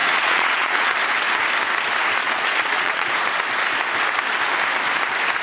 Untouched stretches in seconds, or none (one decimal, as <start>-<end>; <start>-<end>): 0.9-2.2; 3.1-5.4